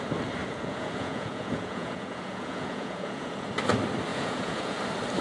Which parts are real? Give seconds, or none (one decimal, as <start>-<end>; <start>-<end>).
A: 0.0-0.4; 3.5-4.1; 4.8-5.2